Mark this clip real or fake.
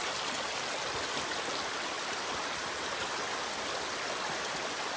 real